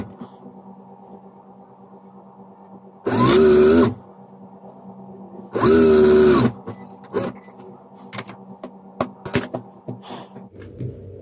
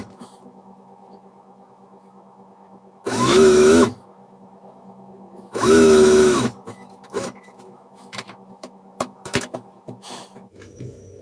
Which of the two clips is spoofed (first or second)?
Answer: second